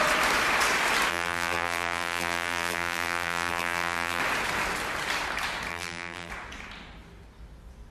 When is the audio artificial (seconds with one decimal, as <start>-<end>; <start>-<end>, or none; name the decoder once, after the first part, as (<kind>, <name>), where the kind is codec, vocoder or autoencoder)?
1.1-4.2 (vocoder, BigVGAN v2); 5.7-6.3